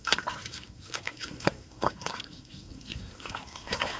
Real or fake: fake